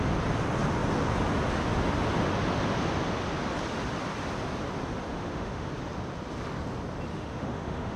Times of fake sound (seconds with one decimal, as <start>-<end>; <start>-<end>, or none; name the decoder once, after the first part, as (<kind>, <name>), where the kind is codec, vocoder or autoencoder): 5.1-5.7 (autoencoder, DAC-VAE); 7.1-8.0